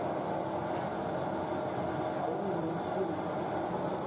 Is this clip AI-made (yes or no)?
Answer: no